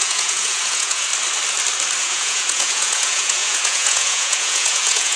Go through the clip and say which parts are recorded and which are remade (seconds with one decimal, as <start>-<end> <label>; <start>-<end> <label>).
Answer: 0.0-1.1 remade; 1.1-2.0 recorded; 2.0-5.2 remade